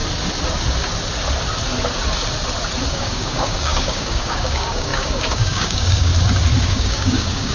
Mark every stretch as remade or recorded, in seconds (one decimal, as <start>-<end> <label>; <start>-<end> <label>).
0.0-2.9 recorded; 2.9-6.1 remade; 6.1-6.6 recorded; 6.6-7.5 remade